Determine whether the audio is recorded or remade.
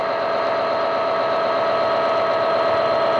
recorded